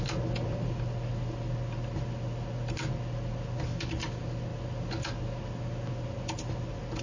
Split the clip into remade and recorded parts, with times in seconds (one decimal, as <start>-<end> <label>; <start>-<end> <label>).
0.0-7.0 recorded

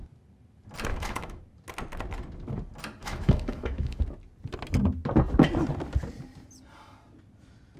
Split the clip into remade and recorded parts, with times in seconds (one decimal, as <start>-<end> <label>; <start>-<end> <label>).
0.0-0.9 recorded; 0.9-1.4 remade; 1.4-3.0 recorded; 3.0-4.0 remade; 4.0-7.8 recorded

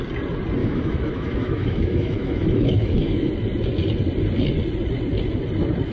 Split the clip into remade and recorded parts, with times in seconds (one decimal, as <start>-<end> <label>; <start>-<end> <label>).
0.0-0.6 recorded; 0.6-3.3 remade; 3.3-5.9 recorded

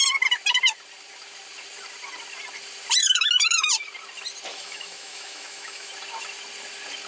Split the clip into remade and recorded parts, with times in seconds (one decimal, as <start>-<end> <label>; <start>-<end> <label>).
0.0-3.0 recorded; 3.0-3.7 remade; 3.7-4.5 recorded; 4.5-5.9 remade; 5.9-7.1 recorded

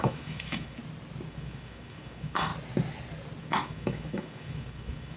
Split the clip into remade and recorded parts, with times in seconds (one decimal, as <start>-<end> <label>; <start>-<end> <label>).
0.0-0.8 remade; 0.8-1.3 recorded; 1.3-2.5 remade; 2.5-3.4 recorded; 3.4-5.2 remade

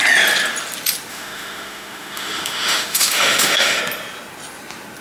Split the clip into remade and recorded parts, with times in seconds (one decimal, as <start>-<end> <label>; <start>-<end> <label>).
0.0-1.1 recorded; 1.1-3.8 remade; 3.8-5.0 recorded

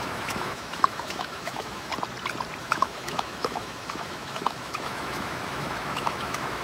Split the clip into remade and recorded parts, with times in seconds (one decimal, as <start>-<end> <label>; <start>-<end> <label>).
0.0-1.9 remade; 1.9-2.6 recorded; 2.6-6.6 remade